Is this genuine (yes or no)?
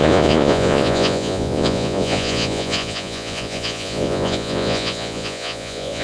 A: no